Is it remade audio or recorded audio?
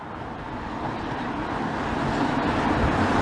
recorded